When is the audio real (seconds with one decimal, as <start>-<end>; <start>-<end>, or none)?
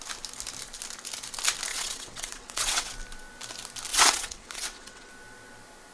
0.0-1.7; 2.9-3.9; 5.1-5.9